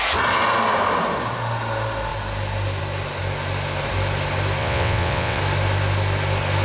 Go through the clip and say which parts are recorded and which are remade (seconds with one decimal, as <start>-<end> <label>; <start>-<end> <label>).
0.0-4.6 recorded; 4.6-5.4 remade; 5.4-6.6 recorded